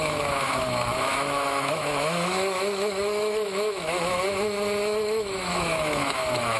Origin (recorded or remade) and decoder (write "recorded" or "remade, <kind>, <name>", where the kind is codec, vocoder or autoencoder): remade, autoencoder, DAC-VAE